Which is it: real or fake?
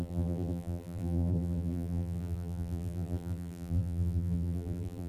fake